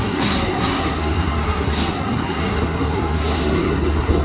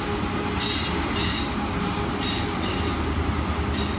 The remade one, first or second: first